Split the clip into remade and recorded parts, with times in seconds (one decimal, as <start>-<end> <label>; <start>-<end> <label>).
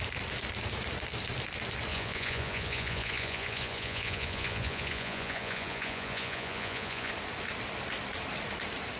0.0-1.9 recorded; 1.9-7.1 remade; 7.1-9.0 recorded